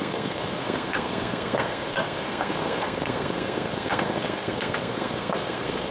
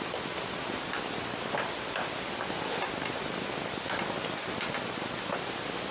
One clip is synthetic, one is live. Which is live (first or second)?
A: second